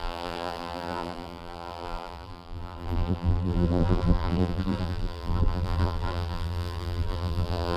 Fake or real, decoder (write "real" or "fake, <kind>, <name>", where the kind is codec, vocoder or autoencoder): fake, vocoder, BigVGAN v2